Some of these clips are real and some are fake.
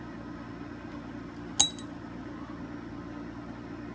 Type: real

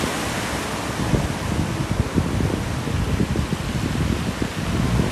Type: real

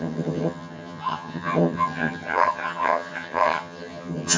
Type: fake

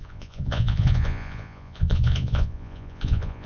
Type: fake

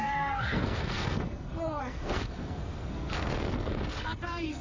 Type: fake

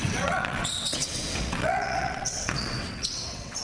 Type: fake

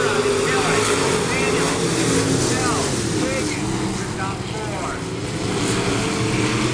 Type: real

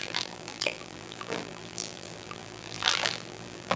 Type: fake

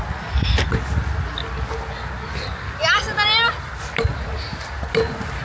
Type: real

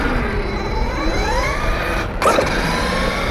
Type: real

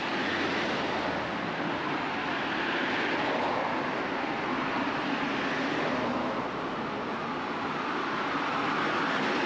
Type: real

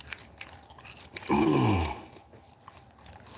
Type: real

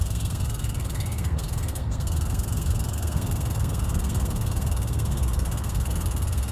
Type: fake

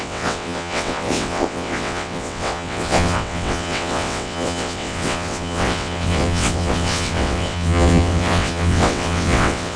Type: fake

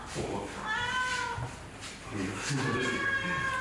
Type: real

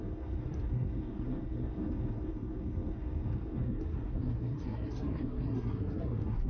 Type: fake